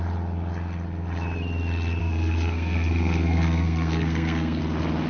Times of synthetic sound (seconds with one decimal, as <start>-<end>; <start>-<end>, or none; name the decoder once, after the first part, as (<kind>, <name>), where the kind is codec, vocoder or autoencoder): 2.0-4.6 (codec, SNAC)